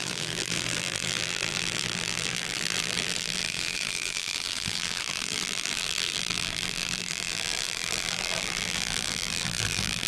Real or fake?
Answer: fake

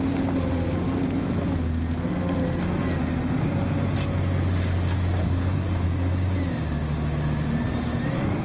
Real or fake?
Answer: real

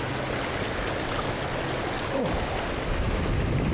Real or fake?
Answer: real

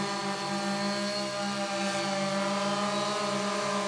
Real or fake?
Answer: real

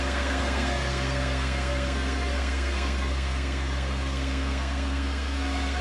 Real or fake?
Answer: fake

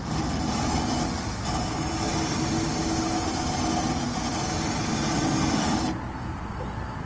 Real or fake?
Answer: real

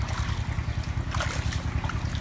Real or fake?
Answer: real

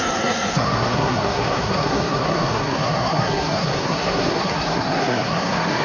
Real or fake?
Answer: fake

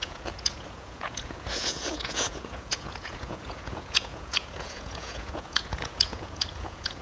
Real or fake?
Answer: fake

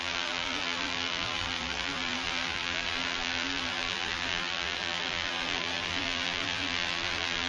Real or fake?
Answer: fake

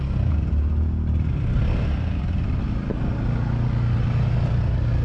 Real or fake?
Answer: real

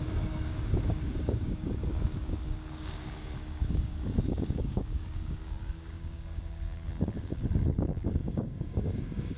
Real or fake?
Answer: fake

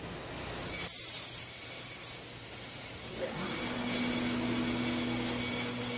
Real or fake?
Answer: real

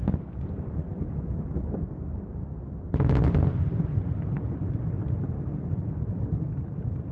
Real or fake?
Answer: real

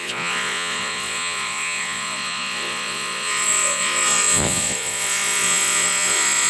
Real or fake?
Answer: fake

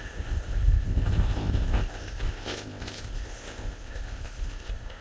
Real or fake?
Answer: fake